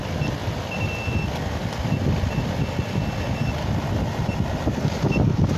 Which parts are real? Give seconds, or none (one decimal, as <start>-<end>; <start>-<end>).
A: 0.0-5.6